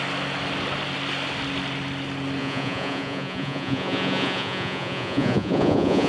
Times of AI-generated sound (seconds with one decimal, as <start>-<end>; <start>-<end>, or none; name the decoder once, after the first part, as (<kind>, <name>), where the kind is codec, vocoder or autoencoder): 2.4-6.1 (vocoder, Vocos)